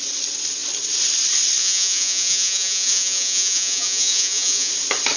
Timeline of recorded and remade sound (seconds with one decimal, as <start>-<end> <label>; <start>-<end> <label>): 0.0-1.6 recorded; 1.6-4.7 remade; 4.7-5.2 recorded